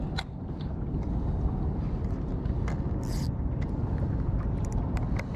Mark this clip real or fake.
real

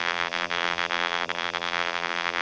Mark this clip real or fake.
fake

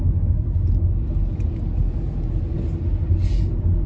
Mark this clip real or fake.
real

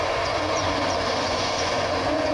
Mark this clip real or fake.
fake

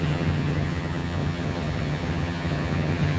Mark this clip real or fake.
fake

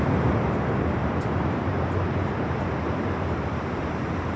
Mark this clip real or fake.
fake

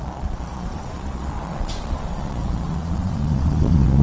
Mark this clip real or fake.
fake